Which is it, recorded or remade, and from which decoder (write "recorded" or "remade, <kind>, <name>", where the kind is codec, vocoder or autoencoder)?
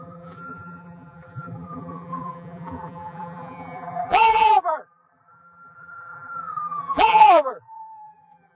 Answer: remade, vocoder, BigVGAN v2